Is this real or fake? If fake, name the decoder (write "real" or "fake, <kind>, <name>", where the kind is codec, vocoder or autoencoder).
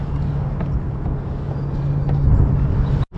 real